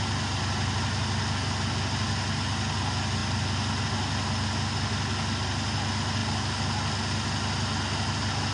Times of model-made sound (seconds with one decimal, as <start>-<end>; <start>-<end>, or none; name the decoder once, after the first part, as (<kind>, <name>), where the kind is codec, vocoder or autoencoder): none